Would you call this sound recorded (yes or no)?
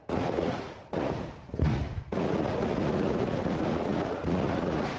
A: no